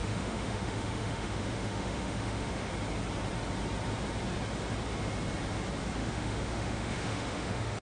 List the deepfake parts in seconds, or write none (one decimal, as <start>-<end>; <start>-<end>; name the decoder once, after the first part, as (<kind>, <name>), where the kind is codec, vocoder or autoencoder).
0.0-2.7 (autoencoder, DAC-VAE); 6.0-7.8